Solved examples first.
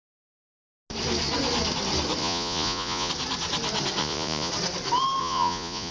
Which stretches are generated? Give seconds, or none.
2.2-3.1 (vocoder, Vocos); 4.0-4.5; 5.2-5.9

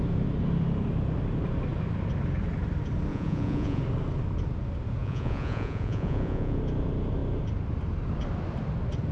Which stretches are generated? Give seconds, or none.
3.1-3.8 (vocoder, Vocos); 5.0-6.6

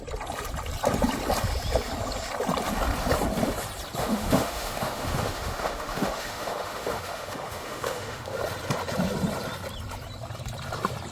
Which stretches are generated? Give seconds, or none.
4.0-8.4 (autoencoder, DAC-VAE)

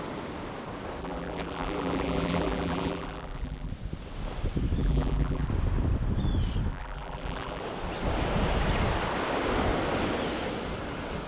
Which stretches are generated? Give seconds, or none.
1.0-3.7 (vocoder, BigVGAN v2); 4.8-5.5; 6.7-7.6

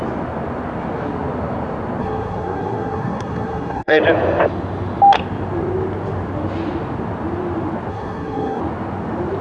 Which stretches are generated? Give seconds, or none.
2.0-4.0 (codec, SNAC); 7.9-8.6

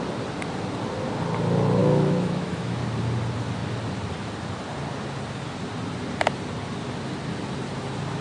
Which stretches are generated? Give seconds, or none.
1.8-2.8 (autoencoder, DAC-VAE)

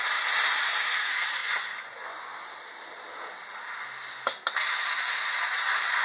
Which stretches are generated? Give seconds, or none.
1.4-2.2 (vocoder, Vocos)

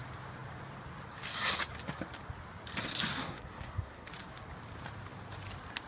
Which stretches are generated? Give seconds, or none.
3.2-4.1 (codec, SNAC)